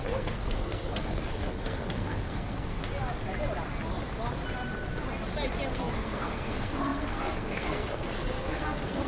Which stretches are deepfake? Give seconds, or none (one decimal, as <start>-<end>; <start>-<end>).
0.0-2.9; 5.7-9.1